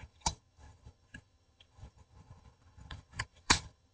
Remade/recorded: remade